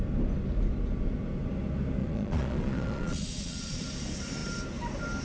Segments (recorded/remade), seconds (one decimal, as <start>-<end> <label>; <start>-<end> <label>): 0.0-2.0 recorded; 2.0-3.8 remade; 3.8-5.2 recorded